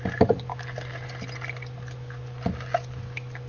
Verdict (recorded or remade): recorded